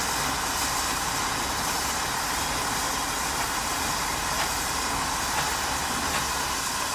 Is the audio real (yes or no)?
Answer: yes